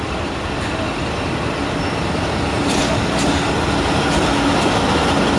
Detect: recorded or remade recorded